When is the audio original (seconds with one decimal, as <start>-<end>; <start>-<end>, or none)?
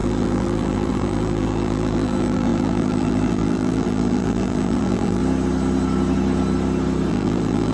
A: 5.2-7.1